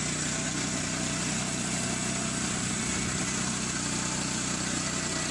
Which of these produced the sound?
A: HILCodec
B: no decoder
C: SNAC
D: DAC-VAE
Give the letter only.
B